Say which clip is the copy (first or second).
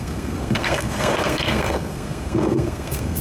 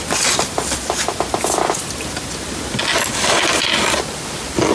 first